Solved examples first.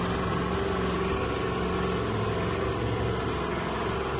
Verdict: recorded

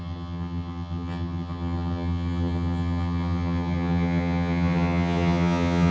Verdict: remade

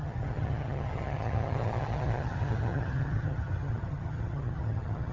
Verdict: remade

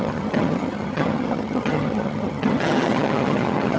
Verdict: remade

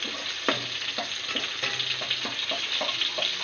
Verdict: recorded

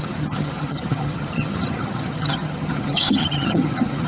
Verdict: remade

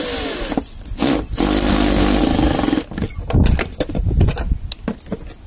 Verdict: recorded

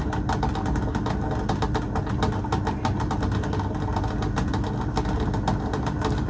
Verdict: recorded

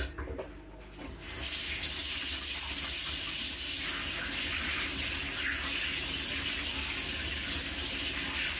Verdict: recorded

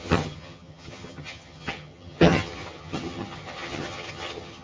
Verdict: remade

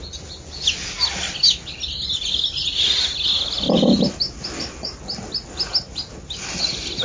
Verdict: recorded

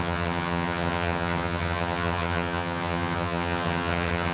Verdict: remade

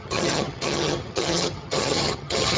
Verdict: remade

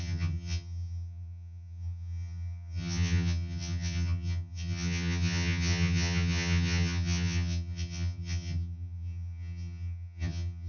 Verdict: remade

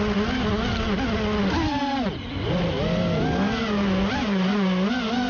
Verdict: recorded